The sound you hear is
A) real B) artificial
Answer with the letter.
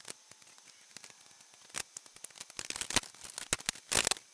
A